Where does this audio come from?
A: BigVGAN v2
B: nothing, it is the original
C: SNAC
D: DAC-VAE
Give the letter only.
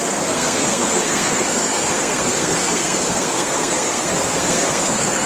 C